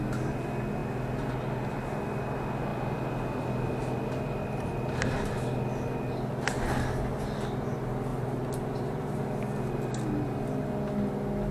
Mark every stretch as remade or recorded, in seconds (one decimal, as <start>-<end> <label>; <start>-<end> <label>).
0.0-8.1 recorded; 8.1-9.2 remade; 9.2-11.5 recorded